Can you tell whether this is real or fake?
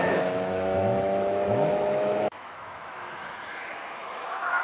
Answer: fake